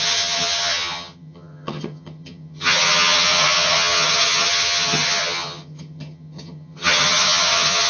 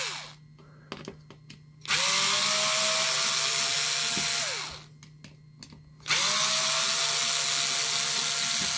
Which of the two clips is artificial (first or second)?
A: first